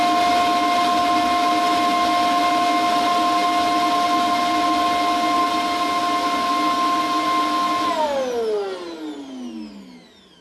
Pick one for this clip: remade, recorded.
recorded